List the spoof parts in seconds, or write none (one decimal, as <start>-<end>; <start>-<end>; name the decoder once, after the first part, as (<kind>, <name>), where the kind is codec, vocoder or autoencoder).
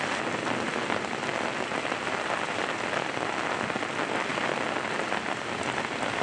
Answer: none